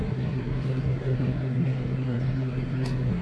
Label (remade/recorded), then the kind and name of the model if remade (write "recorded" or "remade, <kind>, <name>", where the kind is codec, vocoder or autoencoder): remade, codec, SNAC